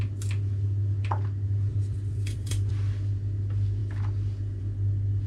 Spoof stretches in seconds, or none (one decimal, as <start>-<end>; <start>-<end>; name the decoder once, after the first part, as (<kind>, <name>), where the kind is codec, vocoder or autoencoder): 1.7-2.7 (vocoder, BigVGAN v2)